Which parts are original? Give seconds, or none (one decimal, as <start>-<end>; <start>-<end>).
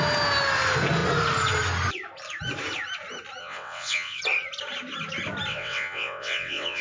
0.0-3.4; 4.2-5.5